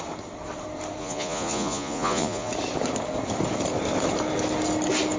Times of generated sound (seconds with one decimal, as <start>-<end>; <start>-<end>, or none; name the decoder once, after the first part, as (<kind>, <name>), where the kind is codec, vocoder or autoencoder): 1.0-2.5 (vocoder, Vocos)